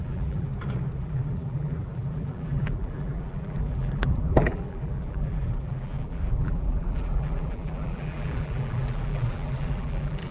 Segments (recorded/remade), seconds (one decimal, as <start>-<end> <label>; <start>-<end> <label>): 0.0-0.5 remade; 0.5-1.0 recorded; 1.0-10.3 remade